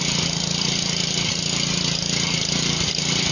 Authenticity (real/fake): fake